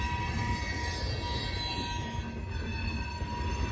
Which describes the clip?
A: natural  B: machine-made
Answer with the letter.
A